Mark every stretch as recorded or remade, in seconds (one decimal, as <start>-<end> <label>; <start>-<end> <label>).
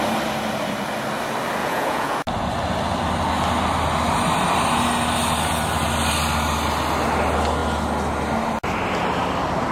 0.0-1.6 recorded; 1.6-2.2 remade; 2.2-9.7 recorded